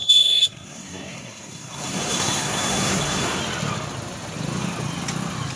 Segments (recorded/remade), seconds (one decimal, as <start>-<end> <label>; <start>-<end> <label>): 0.0-3.4 remade; 3.4-5.6 recorded